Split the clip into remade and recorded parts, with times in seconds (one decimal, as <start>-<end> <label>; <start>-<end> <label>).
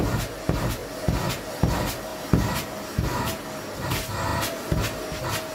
0.0-5.5 recorded